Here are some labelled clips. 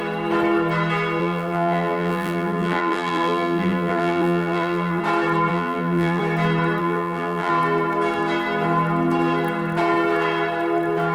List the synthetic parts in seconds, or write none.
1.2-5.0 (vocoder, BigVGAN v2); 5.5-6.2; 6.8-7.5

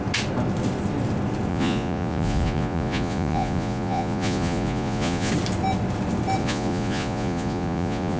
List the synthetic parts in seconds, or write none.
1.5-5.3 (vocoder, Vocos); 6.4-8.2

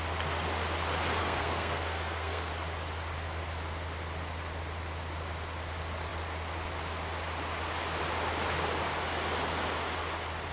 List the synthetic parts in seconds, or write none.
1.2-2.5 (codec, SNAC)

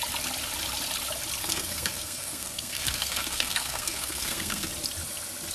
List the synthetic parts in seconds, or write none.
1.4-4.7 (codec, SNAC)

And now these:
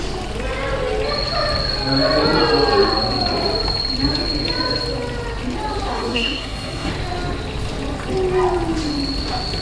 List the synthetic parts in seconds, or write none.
5.9-6.9 (codec, SNAC)